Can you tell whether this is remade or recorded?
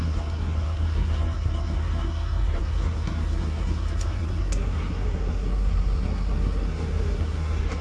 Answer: remade